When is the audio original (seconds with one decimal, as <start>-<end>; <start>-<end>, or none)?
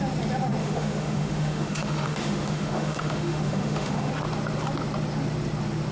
0.0-0.6; 4.1-5.9